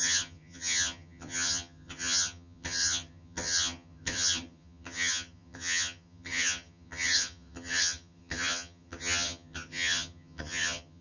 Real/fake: fake